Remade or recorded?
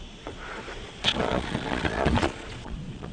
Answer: remade